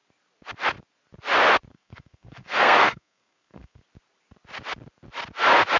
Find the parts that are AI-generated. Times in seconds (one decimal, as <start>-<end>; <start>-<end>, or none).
1.7-3.8